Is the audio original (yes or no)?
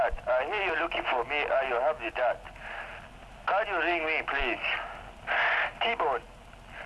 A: yes